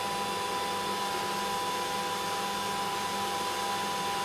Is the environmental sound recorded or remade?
recorded